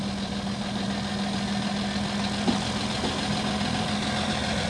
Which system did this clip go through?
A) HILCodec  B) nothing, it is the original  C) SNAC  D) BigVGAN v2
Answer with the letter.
B